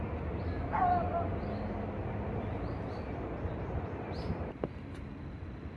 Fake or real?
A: real